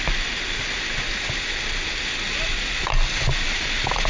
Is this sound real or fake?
real